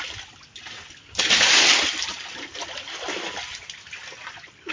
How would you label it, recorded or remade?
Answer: recorded